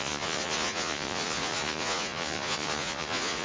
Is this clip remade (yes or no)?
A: yes